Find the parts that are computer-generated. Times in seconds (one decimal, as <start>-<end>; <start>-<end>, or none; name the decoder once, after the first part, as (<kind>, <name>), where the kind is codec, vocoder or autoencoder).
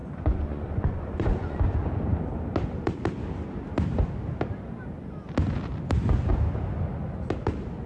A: 0.0-1.6 (vocoder, Vocos)